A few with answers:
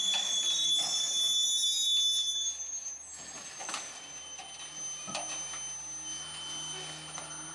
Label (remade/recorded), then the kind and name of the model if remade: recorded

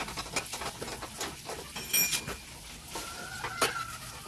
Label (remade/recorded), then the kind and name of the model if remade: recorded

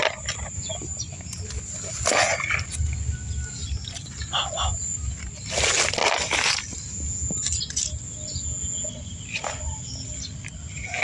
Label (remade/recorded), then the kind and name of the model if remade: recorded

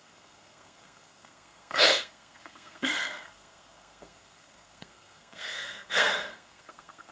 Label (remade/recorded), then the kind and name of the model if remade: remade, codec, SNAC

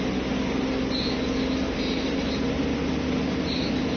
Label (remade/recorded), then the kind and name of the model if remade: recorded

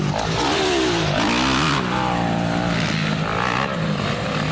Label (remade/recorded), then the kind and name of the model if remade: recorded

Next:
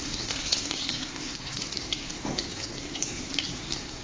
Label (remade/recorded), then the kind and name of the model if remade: remade, codec, SNAC